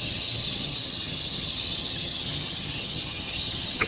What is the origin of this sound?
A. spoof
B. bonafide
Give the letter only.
A